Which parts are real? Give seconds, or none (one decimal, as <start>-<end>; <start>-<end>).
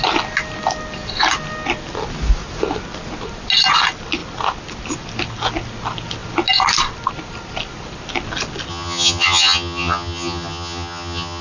0.0-8.7